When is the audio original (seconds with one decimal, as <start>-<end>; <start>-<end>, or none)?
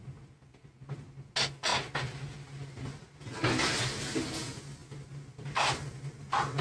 0.0-6.6